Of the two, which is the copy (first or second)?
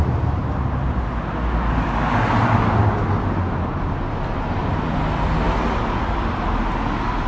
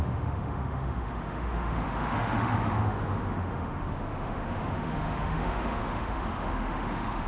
second